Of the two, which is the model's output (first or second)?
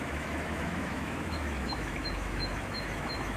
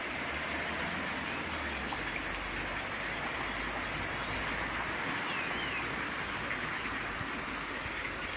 first